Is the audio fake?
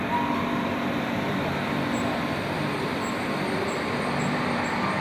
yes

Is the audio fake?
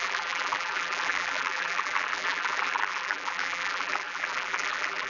yes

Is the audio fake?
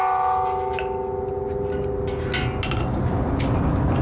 no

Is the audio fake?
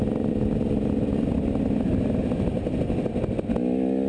no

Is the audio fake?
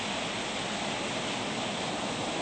no